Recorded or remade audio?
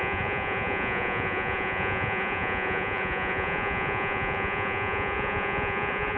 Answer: remade